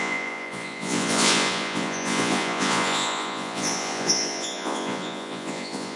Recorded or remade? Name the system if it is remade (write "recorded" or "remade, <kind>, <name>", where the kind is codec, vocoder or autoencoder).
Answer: remade, vocoder, Vocos